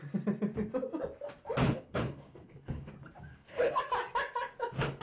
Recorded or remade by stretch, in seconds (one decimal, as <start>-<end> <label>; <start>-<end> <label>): 0.0-1.6 recorded; 1.6-2.9 remade; 2.9-3.3 recorded; 3.3-3.8 remade; 3.8-5.0 recorded

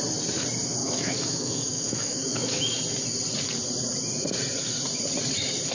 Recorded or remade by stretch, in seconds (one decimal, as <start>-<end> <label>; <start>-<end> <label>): 0.0-0.8 recorded; 0.8-2.8 remade; 2.8-5.7 recorded